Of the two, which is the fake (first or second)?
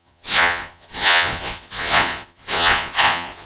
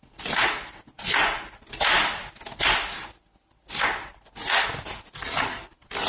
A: first